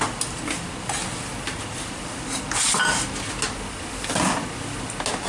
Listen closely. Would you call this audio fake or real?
real